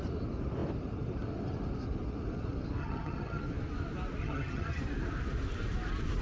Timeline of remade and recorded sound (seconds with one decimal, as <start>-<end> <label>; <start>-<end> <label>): 0.0-2.8 recorded; 2.8-3.4 remade; 3.4-4.2 recorded; 4.2-4.8 remade; 4.8-6.2 recorded